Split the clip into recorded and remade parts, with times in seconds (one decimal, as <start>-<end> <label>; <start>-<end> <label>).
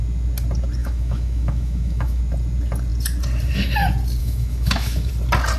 0.0-0.8 recorded; 0.8-2.2 remade; 2.2-4.2 recorded; 4.2-5.1 remade; 5.1-5.6 recorded